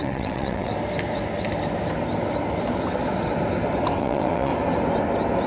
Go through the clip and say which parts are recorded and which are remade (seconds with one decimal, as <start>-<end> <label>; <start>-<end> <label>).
0.0-0.7 remade; 0.7-4.0 recorded; 4.0-4.5 remade; 4.5-5.5 recorded

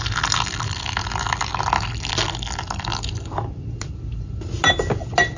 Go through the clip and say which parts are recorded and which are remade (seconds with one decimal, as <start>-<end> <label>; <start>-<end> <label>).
0.0-5.4 recorded

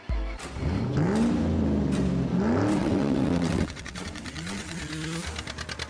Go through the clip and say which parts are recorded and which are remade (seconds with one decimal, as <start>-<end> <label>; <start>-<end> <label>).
0.0-2.8 recorded; 2.8-4.9 remade; 4.9-5.9 recorded

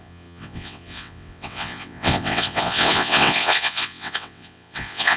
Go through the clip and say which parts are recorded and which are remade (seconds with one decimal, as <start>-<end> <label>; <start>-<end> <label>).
0.0-5.2 remade